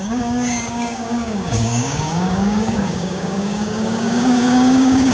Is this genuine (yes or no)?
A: no